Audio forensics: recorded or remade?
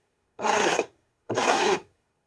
remade